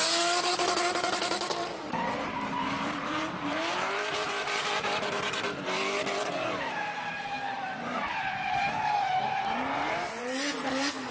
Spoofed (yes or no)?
yes